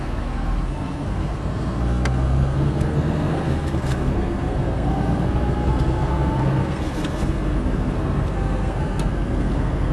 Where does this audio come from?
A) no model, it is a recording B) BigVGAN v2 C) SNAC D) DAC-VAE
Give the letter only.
C